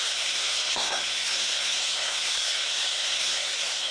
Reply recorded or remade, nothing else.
remade